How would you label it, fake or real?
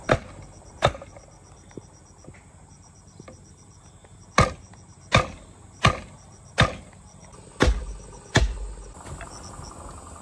real